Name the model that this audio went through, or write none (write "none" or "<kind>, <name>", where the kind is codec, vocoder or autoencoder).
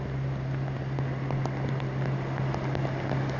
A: none